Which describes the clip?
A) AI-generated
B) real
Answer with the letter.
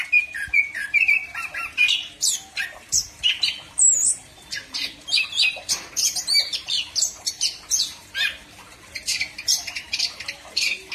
A